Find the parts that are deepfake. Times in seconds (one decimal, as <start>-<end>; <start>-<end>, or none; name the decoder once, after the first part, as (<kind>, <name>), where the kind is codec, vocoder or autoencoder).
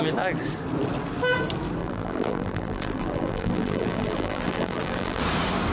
1.8-5.2 (vocoder, BigVGAN v2)